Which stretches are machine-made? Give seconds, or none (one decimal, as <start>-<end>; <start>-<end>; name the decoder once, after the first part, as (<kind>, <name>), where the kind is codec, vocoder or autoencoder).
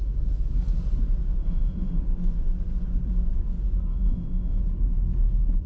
1.4-2.0 (autoencoder, DAC-VAE); 3.9-4.6